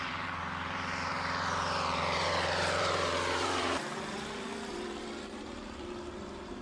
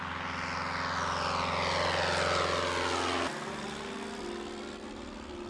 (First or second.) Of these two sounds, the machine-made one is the first